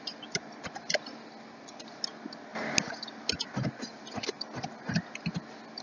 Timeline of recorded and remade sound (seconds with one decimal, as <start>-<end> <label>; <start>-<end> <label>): 0.0-5.8 recorded